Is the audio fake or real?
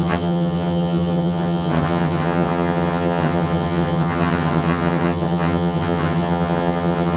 fake